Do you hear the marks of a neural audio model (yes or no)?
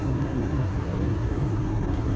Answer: yes